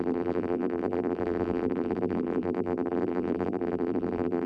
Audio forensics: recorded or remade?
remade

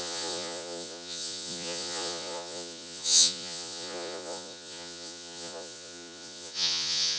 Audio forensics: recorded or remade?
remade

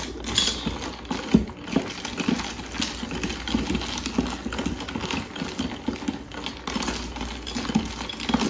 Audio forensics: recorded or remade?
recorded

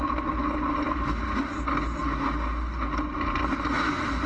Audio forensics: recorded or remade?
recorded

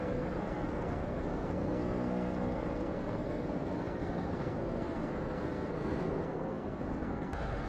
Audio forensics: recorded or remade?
remade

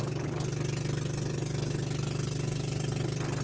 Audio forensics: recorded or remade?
recorded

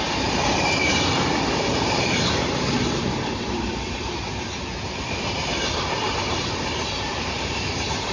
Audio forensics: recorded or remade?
remade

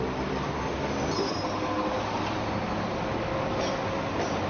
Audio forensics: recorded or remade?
recorded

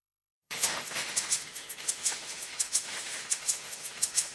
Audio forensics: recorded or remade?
remade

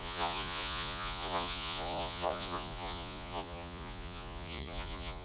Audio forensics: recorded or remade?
remade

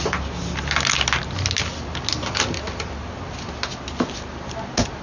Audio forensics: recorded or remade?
recorded